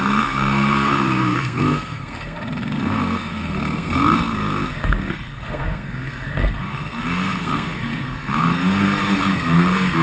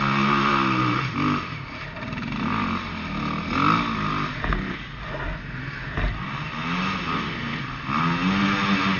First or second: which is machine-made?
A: first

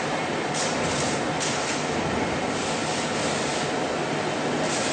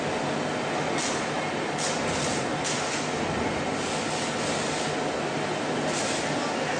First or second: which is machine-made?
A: first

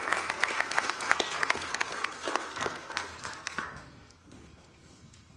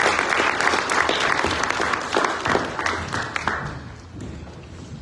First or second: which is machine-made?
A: first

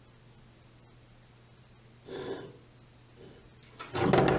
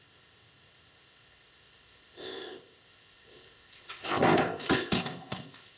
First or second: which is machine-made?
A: second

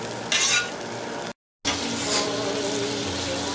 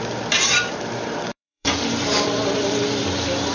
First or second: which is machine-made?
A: second